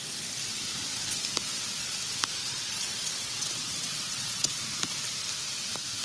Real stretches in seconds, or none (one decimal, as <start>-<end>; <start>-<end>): 0.0-2.4; 4.6-6.0